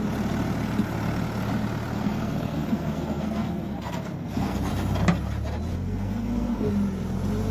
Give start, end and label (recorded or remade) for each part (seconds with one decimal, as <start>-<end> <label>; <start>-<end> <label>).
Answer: 0.0-1.9 recorded; 1.9-4.7 remade; 4.7-5.7 recorded; 5.7-6.7 remade; 6.7-7.5 recorded